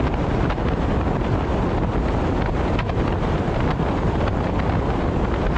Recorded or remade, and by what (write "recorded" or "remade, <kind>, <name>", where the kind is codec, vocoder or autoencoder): recorded